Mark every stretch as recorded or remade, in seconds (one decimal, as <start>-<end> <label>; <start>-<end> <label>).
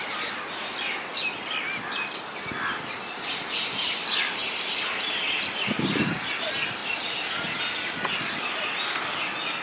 0.0-9.6 recorded